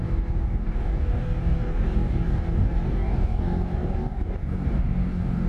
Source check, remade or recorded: remade